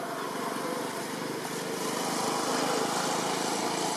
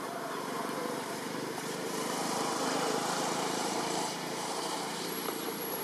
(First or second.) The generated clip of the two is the second